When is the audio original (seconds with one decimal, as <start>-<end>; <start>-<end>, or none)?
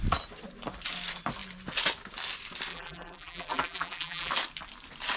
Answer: 0.0-2.7; 4.3-5.2